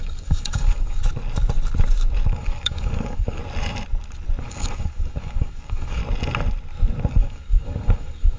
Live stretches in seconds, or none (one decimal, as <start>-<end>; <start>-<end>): 1.0-2.3; 3.4-4.4; 6.0-7.1